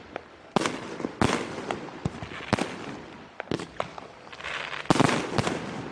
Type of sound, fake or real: real